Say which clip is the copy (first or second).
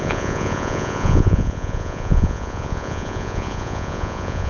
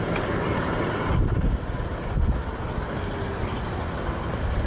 first